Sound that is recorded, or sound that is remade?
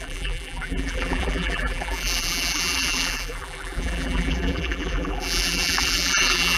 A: remade